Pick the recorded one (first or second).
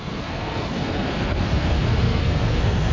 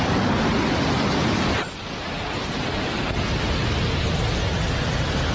second